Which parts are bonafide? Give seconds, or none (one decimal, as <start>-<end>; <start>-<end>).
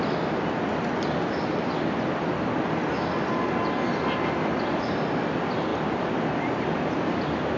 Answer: 0.0-7.6